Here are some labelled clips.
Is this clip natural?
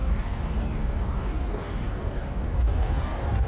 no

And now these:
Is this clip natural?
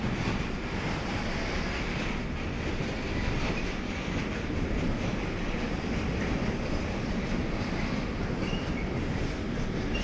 yes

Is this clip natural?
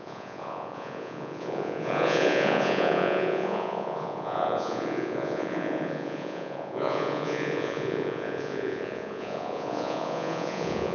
no